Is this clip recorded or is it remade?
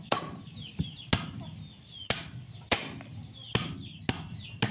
recorded